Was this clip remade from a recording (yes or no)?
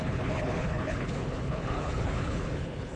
yes